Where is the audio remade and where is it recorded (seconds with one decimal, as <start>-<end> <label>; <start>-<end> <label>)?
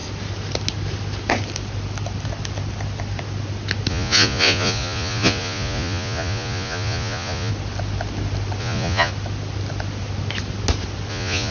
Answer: 0.0-3.9 recorded; 3.9-7.5 remade; 7.5-8.6 recorded; 8.6-9.1 remade; 9.1-11.1 recorded; 11.1-11.5 remade